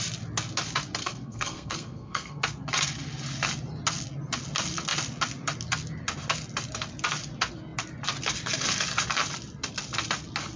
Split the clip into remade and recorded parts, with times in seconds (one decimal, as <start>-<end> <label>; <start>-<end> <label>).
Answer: 0.0-1.0 recorded; 1.0-2.4 remade; 2.4-10.6 recorded

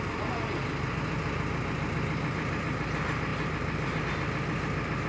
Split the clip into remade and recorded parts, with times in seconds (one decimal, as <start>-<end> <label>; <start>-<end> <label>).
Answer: 0.0-5.1 recorded

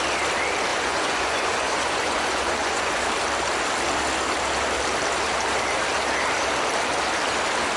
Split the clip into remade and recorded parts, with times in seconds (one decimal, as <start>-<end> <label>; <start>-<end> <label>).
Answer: 0.0-0.7 recorded; 0.7-3.0 remade; 3.0-7.8 recorded

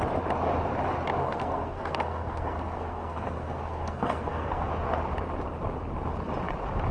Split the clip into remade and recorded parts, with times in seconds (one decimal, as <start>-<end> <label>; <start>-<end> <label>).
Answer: 0.0-1.2 recorded; 1.2-4.7 remade; 4.7-6.9 recorded

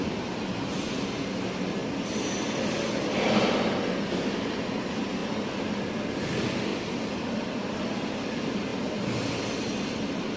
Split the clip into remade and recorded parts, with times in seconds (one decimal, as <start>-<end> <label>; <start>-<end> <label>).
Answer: 0.0-5.2 recorded; 5.2-6.1 remade; 6.1-6.7 recorded; 6.7-7.3 remade; 7.3-10.4 recorded

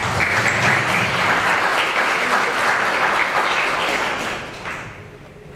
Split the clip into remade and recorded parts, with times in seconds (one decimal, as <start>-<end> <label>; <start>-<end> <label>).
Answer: 0.0-0.8 recorded; 0.8-1.7 remade; 1.7-5.1 recorded; 5.1-5.6 remade

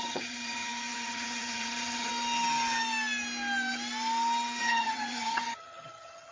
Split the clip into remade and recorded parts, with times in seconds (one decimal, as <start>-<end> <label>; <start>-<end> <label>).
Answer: 0.0-2.1 remade; 2.1-4.6 recorded; 4.6-6.3 remade

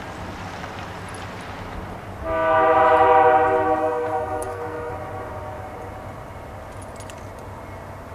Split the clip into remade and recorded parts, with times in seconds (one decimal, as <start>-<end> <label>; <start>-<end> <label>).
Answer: 0.0-3.8 recorded; 3.8-4.9 remade; 4.9-8.1 recorded